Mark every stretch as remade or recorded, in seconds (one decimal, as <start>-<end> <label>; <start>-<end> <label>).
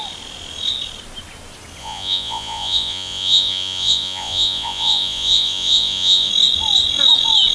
0.0-1.8 recorded; 1.8-6.3 remade; 6.3-7.5 recorded